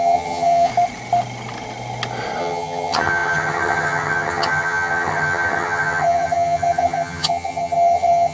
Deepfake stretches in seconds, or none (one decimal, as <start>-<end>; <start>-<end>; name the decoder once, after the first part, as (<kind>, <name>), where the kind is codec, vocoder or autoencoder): 0.0-0.7 (vocoder, HiFi-GAN); 2.4-8.3